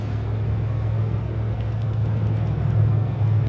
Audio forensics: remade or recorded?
remade